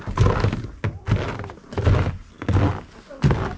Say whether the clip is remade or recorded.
recorded